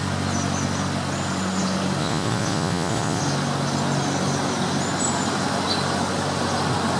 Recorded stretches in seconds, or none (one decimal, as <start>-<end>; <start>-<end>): 0.0-2.0; 3.2-7.0